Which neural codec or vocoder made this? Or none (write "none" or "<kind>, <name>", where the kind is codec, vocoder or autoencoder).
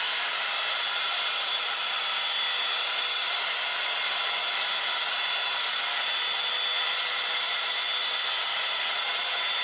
none